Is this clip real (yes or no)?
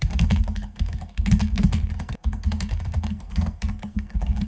no